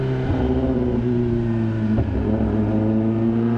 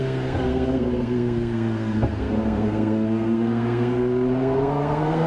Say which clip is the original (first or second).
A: first